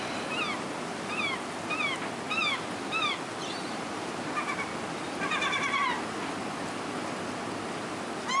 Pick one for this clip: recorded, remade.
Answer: recorded